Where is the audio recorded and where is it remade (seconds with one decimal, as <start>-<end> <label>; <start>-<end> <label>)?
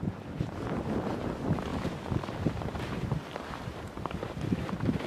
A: 0.0-5.1 remade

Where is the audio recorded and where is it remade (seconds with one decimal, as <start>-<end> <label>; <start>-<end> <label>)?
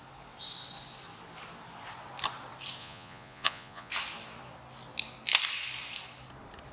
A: 0.0-2.8 recorded; 2.8-3.9 remade; 3.9-6.7 recorded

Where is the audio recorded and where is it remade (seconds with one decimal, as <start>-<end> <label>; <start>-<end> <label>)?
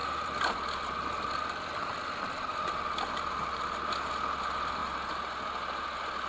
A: 0.0-3.8 remade; 3.8-6.3 recorded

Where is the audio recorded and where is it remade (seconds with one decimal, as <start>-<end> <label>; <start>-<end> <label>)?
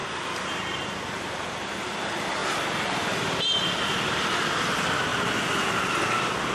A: 0.0-2.4 recorded; 2.4-4.6 remade; 4.6-6.5 recorded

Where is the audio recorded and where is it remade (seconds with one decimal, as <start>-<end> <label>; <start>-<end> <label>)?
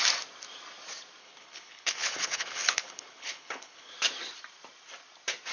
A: 0.0-1.2 recorded; 1.2-3.9 remade; 3.9-5.5 recorded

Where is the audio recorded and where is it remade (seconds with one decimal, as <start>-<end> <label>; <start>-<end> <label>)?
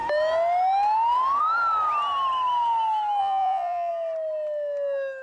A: 0.0-3.2 recorded; 3.2-3.9 remade; 3.9-5.2 recorded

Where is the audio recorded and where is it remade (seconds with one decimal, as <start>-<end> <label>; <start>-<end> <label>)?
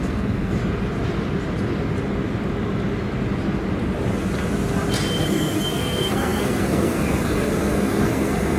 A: 0.0-0.6 remade; 0.6-5.2 recorded; 5.2-8.6 remade